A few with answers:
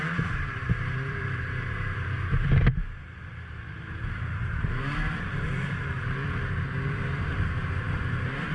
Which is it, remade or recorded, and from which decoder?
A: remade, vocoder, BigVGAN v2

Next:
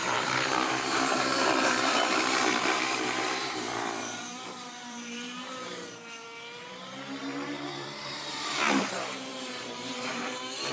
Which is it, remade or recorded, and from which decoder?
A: remade, vocoder, BigVGAN v2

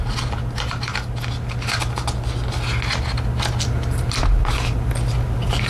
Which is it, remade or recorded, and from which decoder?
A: recorded